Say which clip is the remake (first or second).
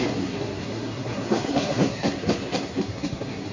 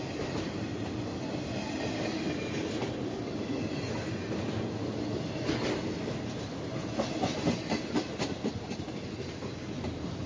first